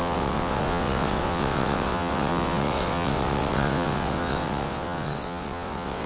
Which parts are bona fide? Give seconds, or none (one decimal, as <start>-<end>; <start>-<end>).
none